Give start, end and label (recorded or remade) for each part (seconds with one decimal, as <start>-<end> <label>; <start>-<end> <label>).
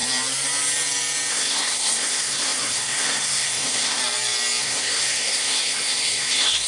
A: 0.0-1.3 recorded; 1.3-4.0 remade; 4.0-4.6 recorded; 4.6-6.7 remade